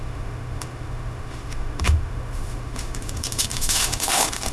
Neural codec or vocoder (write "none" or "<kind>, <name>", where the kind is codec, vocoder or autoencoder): autoencoder, DAC-VAE